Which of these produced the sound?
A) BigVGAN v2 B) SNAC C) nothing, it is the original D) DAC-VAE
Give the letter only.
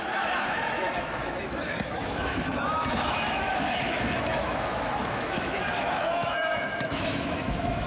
D